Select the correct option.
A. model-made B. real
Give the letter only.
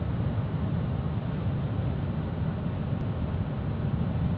B